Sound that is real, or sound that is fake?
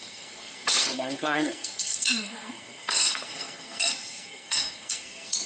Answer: fake